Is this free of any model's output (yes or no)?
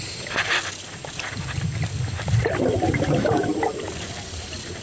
yes